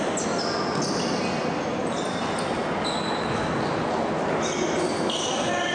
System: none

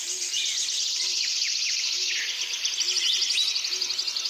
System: none